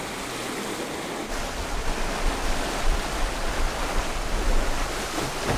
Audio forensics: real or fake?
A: real